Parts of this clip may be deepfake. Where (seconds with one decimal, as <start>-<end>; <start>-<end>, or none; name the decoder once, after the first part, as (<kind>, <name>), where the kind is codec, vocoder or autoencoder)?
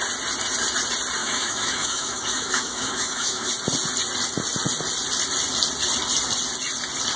1.2-3.5 (autoencoder, DAC-VAE)